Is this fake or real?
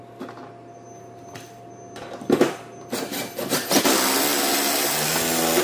real